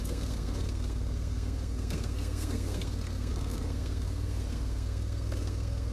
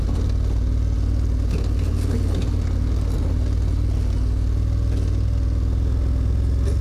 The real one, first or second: second